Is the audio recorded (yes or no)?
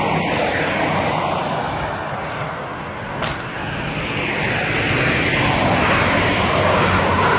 yes